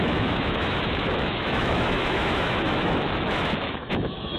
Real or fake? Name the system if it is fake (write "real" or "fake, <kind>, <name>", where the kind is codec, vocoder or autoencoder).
fake, autoencoder, DAC-VAE